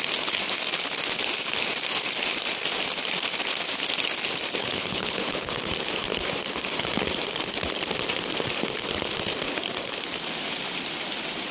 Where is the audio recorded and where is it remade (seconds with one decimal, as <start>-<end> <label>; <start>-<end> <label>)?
0.0-4.6 recorded; 4.6-5.6 remade; 5.6-11.5 recorded

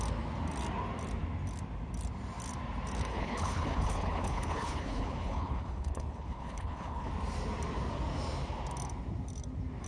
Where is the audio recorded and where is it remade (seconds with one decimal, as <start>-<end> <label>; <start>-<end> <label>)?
0.0-3.1 recorded; 3.1-7.1 remade; 7.1-9.9 recorded

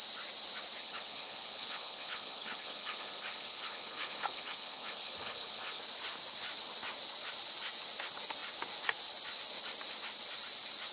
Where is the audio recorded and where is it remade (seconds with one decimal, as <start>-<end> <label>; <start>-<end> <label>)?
0.0-0.8 recorded; 0.8-5.8 remade; 5.8-10.9 recorded